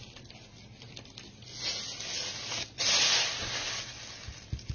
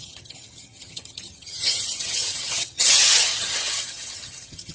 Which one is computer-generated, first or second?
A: second